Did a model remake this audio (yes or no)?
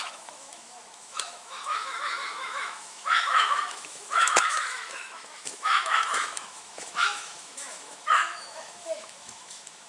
yes